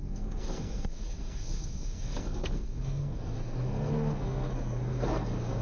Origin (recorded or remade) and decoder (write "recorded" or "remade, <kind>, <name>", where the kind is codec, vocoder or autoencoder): remade, codec, SNAC